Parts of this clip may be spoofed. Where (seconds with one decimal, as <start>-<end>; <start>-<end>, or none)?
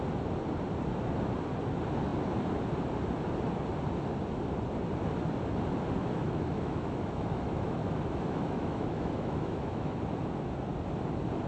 6.0-10.0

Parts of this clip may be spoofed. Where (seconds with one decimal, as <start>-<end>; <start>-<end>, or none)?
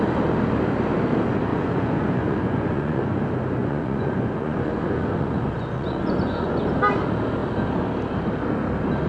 1.5-3.0; 3.6-6.6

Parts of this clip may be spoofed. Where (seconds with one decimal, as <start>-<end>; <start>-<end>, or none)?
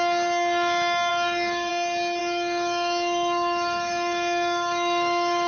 1.1-1.7; 2.2-5.5